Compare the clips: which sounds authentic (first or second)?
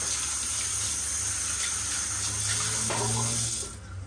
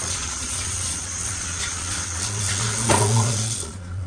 first